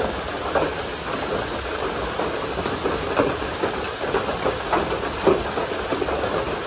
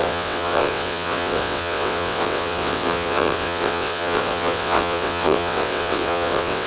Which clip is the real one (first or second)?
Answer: first